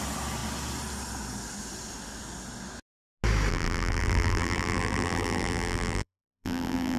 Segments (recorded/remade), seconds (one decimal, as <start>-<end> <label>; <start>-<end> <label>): 0.0-3.5 recorded; 3.5-7.0 remade